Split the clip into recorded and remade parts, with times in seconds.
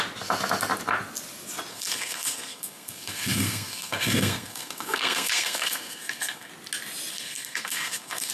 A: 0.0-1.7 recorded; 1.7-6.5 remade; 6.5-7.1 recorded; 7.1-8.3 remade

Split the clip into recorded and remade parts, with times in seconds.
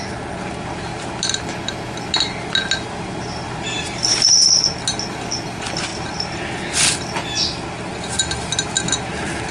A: 0.0-9.5 recorded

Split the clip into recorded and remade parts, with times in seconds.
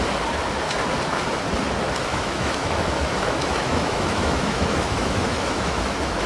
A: 0.0-2.1 recorded; 2.1-6.3 remade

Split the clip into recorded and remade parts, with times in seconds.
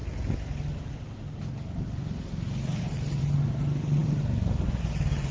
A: 0.0-5.3 recorded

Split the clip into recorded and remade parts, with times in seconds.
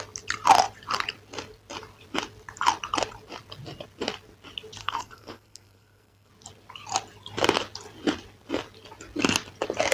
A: 0.0-4.8 recorded; 4.8-6.3 remade; 6.3-9.9 recorded